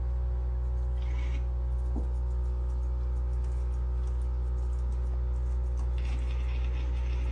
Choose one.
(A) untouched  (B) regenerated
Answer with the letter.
A